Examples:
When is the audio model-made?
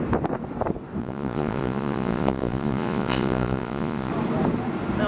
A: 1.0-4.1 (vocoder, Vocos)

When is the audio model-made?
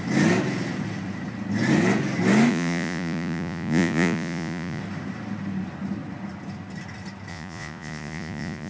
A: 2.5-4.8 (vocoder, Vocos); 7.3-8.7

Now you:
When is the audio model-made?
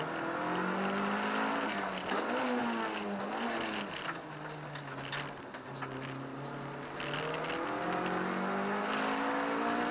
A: none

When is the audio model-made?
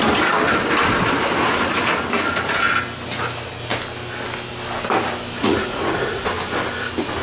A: 5.4-6.2 (vocoder, Vocos)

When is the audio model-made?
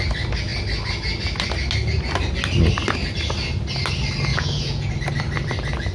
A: 4.3-4.9 (vocoder, Vocos)